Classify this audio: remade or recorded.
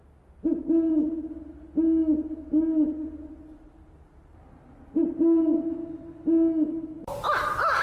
recorded